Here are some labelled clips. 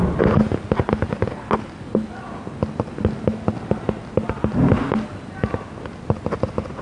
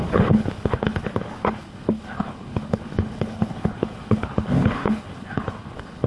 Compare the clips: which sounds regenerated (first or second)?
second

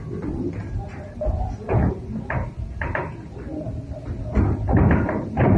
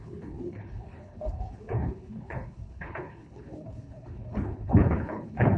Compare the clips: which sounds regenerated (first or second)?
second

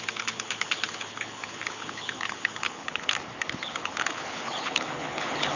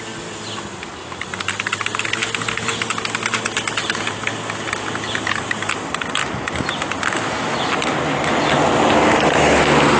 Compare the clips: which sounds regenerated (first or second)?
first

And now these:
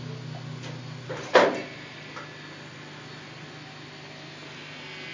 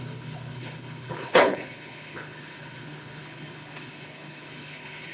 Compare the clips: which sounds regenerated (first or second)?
second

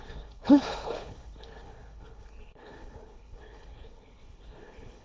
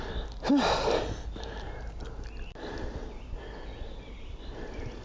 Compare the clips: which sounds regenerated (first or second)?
first